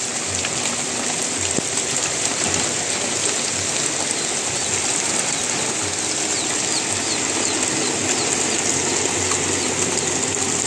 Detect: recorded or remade recorded